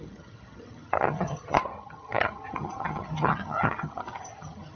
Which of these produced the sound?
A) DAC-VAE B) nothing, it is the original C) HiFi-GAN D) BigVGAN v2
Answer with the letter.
C